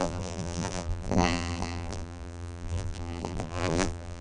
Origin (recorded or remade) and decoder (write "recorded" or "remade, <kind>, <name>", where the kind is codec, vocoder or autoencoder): remade, vocoder, BigVGAN v2